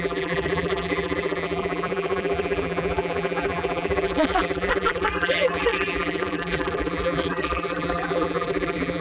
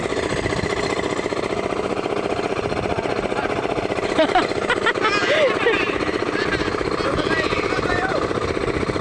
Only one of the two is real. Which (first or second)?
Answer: second